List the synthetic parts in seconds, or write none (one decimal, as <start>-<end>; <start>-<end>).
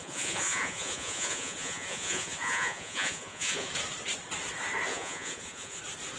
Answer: 0.0-3.7; 4.9-5.8